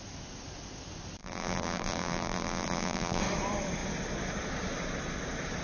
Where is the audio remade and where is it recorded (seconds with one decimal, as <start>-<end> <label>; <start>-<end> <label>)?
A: 0.0-1.2 recorded; 1.2-3.2 remade; 3.2-5.6 recorded